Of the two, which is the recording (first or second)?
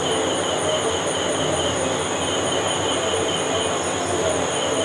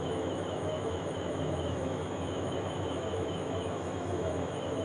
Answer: first